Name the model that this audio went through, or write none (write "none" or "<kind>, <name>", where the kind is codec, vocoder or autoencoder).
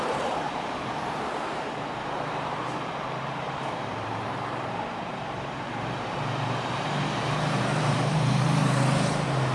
vocoder, BigVGAN v2